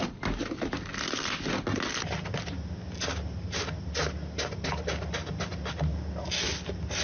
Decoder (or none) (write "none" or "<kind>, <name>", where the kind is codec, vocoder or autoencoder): none